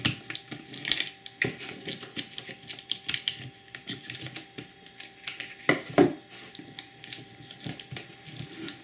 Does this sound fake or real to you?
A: real